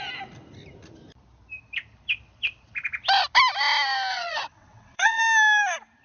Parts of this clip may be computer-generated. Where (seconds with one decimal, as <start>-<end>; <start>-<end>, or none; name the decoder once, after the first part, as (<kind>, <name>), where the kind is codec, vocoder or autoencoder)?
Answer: 4.1-5.2 (vocoder, WaveNeXt)